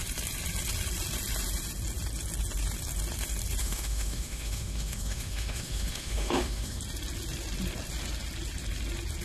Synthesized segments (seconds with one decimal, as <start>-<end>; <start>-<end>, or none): 3.6-6.8